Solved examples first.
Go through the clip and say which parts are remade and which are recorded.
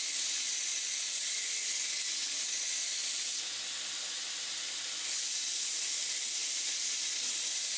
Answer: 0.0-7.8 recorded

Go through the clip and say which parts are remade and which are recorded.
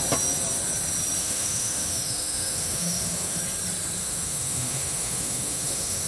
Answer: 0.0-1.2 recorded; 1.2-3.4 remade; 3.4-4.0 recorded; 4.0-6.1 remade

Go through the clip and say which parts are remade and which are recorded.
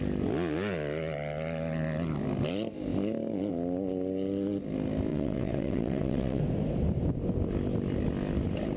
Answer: 0.0-5.1 recorded; 5.1-6.4 remade; 6.4-8.8 recorded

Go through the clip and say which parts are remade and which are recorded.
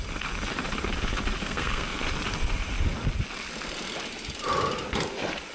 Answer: 0.0-1.4 recorded; 1.4-2.0 remade; 2.0-5.5 recorded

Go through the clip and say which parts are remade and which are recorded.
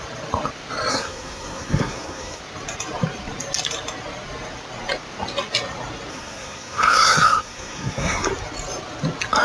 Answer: 0.0-0.9 recorded; 0.9-2.4 remade; 2.4-6.1 recorded; 6.1-8.3 remade; 8.3-9.4 recorded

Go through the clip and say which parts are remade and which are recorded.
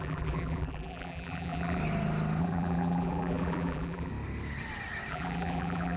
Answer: 0.0-1.8 remade; 1.8-2.4 recorded; 2.4-4.1 remade; 4.1-5.1 recorded; 5.1-6.0 remade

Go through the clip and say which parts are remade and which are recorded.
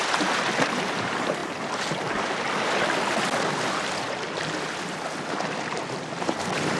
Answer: 0.0-0.7 recorded; 0.7-1.4 remade; 1.4-4.5 recorded; 4.5-6.8 remade